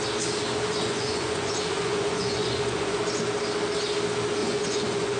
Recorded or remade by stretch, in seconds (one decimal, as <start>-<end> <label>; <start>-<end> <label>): 0.0-0.5 recorded; 0.5-3.0 remade; 3.0-4.4 recorded; 4.4-5.2 remade